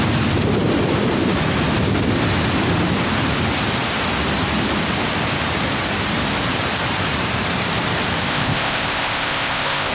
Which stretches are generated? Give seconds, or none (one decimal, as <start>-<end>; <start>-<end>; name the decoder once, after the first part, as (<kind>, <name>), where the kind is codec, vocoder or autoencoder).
8.3-9.9 (codec, ZipCodec)

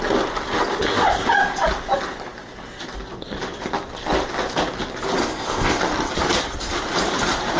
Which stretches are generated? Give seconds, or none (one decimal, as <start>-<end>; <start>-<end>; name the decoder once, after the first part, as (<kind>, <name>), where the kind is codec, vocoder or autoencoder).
5.2-5.8 (codec, ZipCodec)

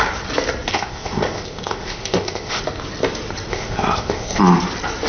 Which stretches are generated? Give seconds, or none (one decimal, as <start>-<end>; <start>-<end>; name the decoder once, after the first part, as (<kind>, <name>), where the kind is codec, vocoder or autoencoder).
0.7-2.6 (codec, ZipCodec); 3.5-4.4

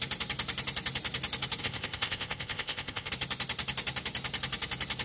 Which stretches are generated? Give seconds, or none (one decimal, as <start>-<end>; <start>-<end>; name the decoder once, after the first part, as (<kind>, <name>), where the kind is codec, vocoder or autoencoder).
1.6-3.1 (codec, ZipCodec)